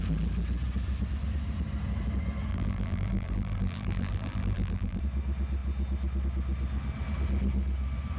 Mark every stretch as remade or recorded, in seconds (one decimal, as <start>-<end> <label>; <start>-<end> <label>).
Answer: 0.0-2.5 recorded; 2.5-5.0 remade; 5.0-8.2 recorded